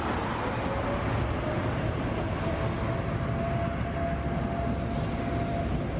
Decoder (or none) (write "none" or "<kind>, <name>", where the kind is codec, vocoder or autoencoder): none